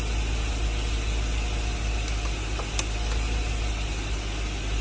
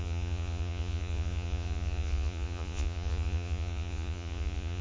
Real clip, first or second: first